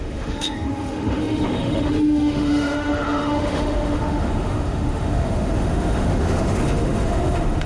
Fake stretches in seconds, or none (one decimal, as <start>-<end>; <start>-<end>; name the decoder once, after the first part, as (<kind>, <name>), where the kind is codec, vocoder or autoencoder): 0.0-7.7 (autoencoder, DAC-VAE)